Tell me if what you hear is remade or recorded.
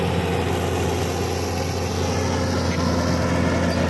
recorded